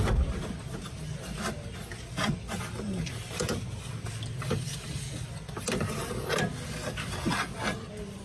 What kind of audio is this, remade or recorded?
recorded